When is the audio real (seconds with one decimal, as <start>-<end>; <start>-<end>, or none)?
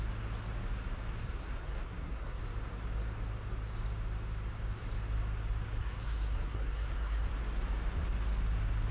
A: 0.0-1.2; 2.4-5.8; 7.3-8.9